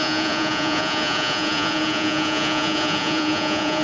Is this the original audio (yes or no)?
no